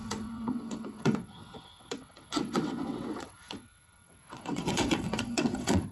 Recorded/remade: remade